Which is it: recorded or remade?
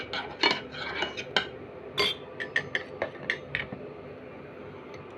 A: recorded